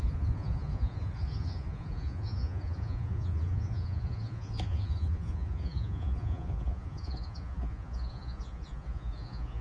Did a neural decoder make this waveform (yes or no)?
yes